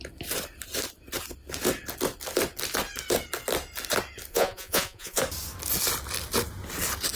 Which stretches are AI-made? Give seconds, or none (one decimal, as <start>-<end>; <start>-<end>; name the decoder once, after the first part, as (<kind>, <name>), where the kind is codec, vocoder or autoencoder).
4.3-5.2 (vocoder, Vocos)